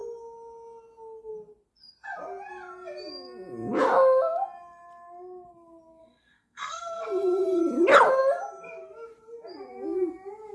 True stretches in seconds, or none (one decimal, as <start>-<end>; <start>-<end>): 0.0-6.0; 7.6-10.5